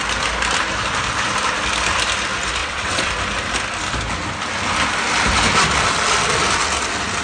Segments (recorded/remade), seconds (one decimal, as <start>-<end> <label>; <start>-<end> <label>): 0.0-2.6 recorded; 2.6-3.1 remade; 3.1-7.2 recorded